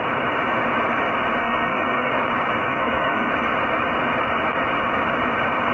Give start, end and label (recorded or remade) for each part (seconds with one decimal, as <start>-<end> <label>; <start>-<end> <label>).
0.0-1.4 recorded; 1.4-2.1 remade; 2.1-2.6 recorded; 2.6-3.3 remade; 3.3-5.7 recorded